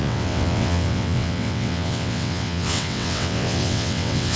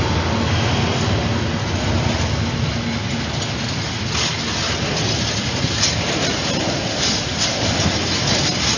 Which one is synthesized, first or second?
first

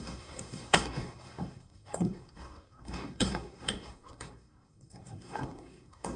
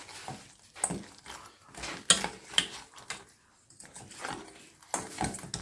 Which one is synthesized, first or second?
first